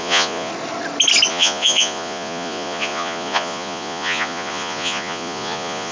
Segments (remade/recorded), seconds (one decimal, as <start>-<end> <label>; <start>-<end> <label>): 0.0-0.5 remade; 0.5-1.3 recorded; 1.3-5.9 remade